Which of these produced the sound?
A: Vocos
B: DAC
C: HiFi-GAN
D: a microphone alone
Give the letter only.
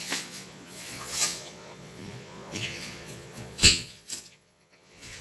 A